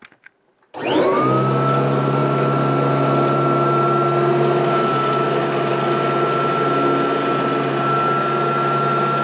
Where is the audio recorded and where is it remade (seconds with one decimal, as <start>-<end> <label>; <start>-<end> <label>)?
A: 0.0-9.2 recorded

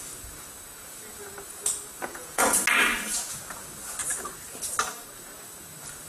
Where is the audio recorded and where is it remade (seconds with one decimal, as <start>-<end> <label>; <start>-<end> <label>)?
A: 0.0-2.0 recorded; 2.0-2.5 remade; 2.5-6.1 recorded

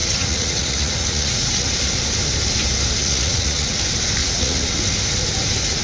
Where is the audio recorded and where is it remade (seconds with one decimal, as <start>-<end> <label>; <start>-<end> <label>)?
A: 0.0-1.7 remade; 1.7-3.0 recorded; 3.0-3.8 remade; 3.8-4.2 recorded; 4.2-4.8 remade; 4.8-5.8 recorded